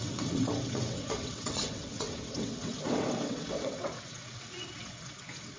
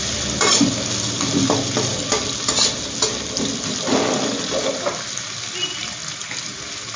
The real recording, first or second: second